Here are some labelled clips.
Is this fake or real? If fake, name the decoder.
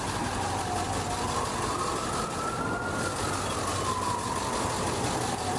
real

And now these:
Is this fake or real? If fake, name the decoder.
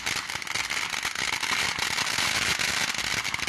real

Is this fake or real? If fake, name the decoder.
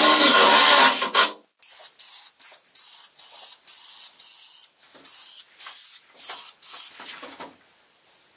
real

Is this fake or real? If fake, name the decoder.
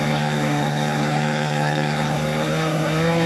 fake, codec, SNAC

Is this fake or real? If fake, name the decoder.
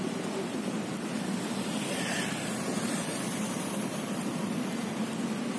fake, vocoder, BigVGAN v2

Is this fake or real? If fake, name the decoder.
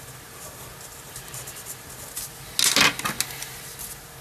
real